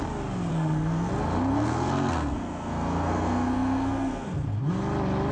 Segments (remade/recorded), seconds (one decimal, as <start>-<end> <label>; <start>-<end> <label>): 0.0-0.5 recorded; 0.5-1.1 remade; 1.1-1.5 recorded; 1.5-4.7 remade; 4.7-5.3 recorded